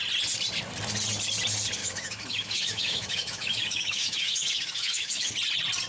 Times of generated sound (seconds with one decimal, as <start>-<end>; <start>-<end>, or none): 1.8-5.3